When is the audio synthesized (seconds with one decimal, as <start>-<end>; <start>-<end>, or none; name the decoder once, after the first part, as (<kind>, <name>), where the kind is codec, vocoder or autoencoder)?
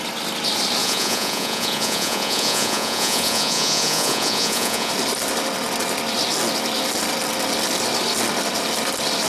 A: 0.8-4.9 (vocoder, Vocos)